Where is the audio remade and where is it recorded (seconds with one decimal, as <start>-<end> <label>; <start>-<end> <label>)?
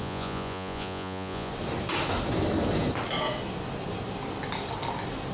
0.0-1.5 remade; 1.5-5.3 recorded